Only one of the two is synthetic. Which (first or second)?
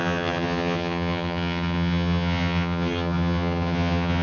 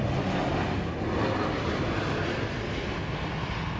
first